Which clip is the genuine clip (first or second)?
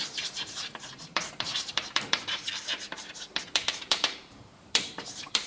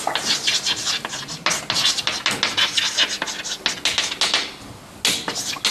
second